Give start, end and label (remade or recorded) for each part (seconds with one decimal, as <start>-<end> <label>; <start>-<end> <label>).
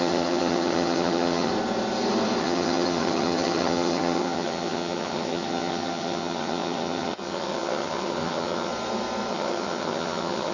0.0-1.5 remade; 1.5-2.4 recorded; 2.4-8.7 remade; 8.7-9.3 recorded; 9.3-10.5 remade